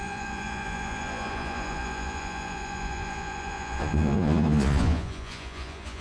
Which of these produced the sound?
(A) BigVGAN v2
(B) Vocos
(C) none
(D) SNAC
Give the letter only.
B